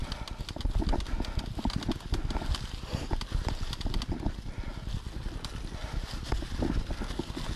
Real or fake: real